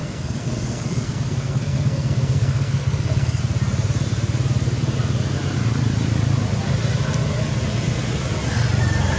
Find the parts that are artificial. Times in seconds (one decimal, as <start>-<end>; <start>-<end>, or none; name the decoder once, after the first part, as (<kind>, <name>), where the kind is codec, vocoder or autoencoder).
0.0-3.4 (codec, SNAC)